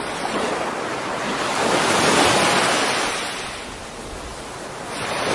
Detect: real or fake real